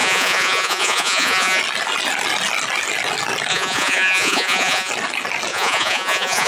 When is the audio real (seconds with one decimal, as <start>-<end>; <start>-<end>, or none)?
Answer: 1.6-3.5; 4.9-5.5